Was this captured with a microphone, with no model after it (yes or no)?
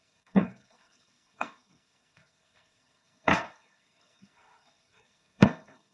no